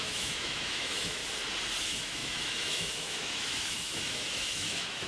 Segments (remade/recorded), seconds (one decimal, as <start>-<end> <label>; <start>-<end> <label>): 0.0-1.2 remade; 1.2-1.8 recorded; 1.8-5.1 remade